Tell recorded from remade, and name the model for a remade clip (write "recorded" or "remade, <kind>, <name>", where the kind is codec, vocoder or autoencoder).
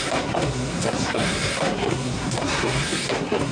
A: remade, codec, SNAC